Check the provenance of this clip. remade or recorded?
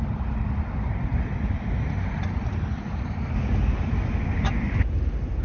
recorded